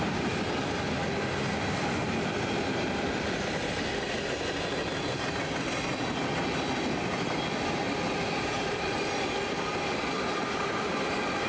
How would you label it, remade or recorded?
recorded